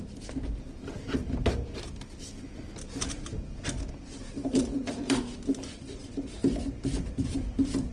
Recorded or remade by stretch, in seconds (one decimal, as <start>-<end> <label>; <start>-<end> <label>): 0.0-4.4 recorded; 4.4-5.2 remade; 5.2-6.0 recorded; 6.0-7.9 remade